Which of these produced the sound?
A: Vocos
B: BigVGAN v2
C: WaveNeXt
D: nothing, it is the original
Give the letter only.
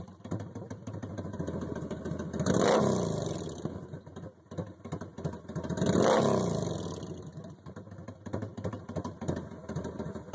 D